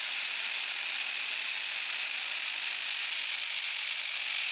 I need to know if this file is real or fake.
real